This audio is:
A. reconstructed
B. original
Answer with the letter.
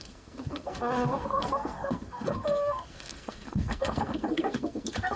A